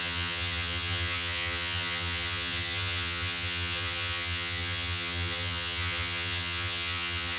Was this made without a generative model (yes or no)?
no